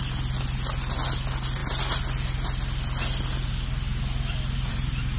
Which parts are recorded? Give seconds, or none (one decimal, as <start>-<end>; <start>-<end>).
0.0-5.2